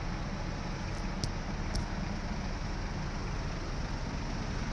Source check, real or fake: real